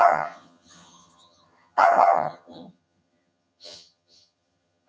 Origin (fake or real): fake